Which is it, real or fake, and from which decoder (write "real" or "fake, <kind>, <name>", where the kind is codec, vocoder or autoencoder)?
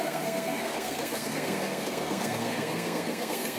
fake, codec, SNAC